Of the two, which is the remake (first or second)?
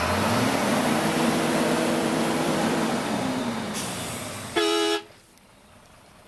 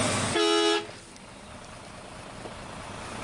first